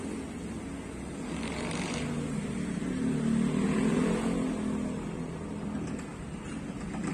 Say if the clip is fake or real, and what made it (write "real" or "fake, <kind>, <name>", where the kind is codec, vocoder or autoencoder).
real